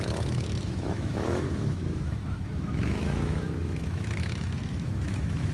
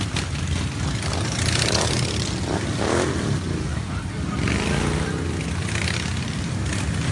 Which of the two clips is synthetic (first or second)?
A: first